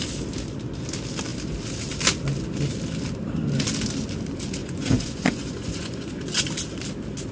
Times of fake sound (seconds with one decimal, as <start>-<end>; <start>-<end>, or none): 4.6-6.4